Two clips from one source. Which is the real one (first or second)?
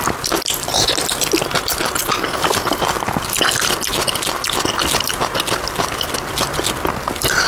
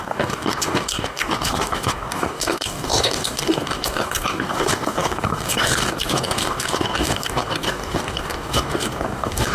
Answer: first